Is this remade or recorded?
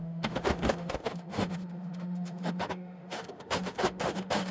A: remade